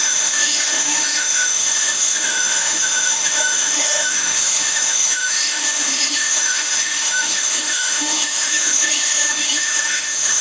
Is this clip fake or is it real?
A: fake